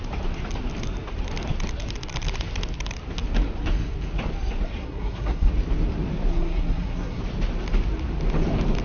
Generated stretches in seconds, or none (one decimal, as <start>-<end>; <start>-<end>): 4.8-5.5; 6.3-7.2

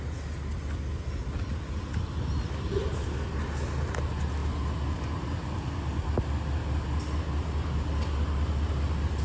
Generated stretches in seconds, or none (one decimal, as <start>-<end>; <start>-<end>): none

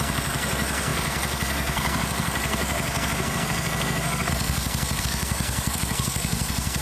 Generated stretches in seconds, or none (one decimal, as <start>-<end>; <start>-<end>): 0.0-6.8

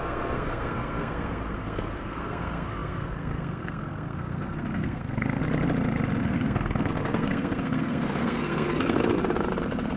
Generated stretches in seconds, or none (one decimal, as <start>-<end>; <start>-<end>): 0.0-5.4; 6.2-9.2

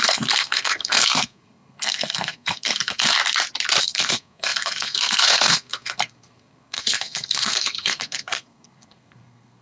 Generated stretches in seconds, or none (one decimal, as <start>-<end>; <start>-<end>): 0.0-3.2; 3.8-9.6

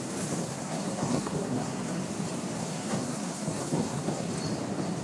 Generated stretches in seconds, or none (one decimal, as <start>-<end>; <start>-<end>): 0.4-2.0; 2.6-4.3

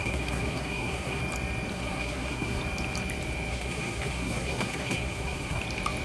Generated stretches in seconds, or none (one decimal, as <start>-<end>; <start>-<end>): 0.0-1.2; 1.7-2.6; 3.5-5.6